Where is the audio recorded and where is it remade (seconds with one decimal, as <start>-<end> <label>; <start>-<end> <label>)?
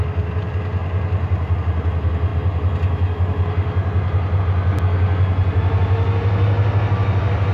0.0-7.5 recorded